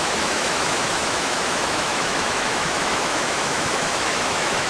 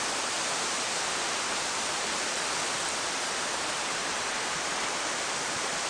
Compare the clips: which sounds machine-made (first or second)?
first